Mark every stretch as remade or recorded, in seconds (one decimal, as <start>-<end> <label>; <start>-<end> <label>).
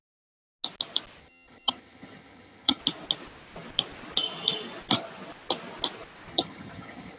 0.0-1.2 recorded; 1.2-2.8 remade; 2.8-6.3 recorded; 6.3-7.2 remade